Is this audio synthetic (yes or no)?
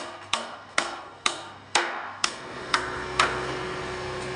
yes